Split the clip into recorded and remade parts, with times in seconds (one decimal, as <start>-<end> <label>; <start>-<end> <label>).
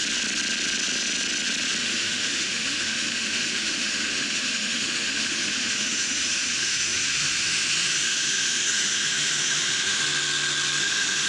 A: 0.0-1.8 recorded; 1.8-10.0 remade; 10.0-10.8 recorded; 10.8-11.3 remade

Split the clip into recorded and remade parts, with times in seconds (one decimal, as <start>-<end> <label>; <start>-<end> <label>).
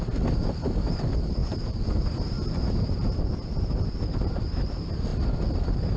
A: 0.0-6.0 recorded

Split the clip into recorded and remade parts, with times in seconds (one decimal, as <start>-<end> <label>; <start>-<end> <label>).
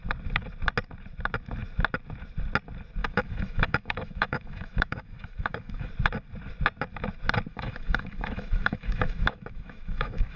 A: 0.0-3.0 recorded; 3.0-5.9 remade; 5.9-7.5 recorded; 7.5-10.4 remade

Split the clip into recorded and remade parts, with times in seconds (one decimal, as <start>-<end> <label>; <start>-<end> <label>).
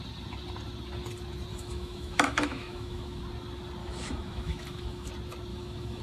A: 0.0-1.5 recorded; 1.5-3.2 remade; 3.2-3.8 recorded; 3.8-5.1 remade; 5.1-5.5 recorded; 5.5-6.0 remade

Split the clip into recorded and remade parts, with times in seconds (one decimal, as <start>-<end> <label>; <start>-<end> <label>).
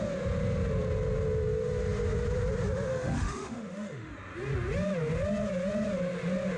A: 0.0-2.9 recorded; 2.9-4.1 remade; 4.1-6.6 recorded